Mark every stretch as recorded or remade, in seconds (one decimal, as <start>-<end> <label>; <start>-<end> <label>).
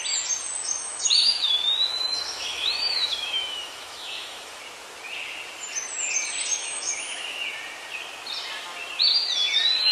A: 0.0-0.6 recorded; 0.6-1.5 remade; 1.5-1.9 recorded; 1.9-4.6 remade; 4.6-6.6 recorded; 6.6-7.4 remade; 7.4-9.9 recorded